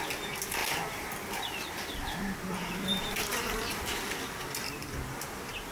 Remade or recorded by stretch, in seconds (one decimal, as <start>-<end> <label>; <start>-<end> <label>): 0.0-0.6 recorded; 0.6-4.0 remade; 4.0-5.7 recorded